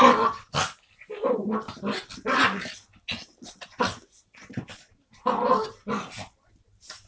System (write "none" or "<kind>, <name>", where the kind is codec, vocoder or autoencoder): none